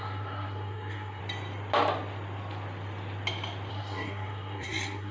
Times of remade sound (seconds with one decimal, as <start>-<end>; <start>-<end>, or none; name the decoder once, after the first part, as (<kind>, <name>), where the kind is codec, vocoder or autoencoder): 0.0-1.2 (codec, SNAC); 3.7-5.1